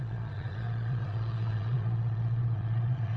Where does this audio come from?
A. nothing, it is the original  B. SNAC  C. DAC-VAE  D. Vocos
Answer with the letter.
D